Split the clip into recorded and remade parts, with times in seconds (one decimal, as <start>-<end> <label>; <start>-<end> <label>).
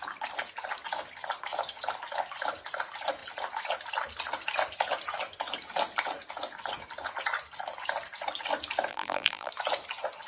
0.0-8.9 recorded; 8.9-9.5 remade; 9.5-10.3 recorded